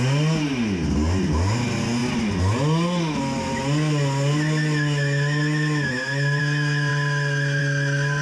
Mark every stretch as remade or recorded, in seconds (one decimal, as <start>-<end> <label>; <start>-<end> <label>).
0.0-8.2 recorded